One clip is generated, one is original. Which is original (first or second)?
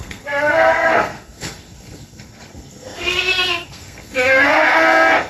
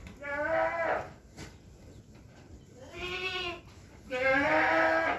second